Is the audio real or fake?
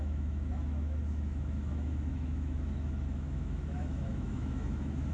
fake